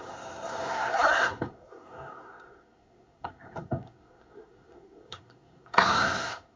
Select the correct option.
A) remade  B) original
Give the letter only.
A